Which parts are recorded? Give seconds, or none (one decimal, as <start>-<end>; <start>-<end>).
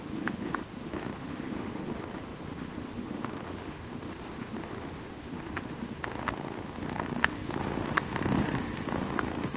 none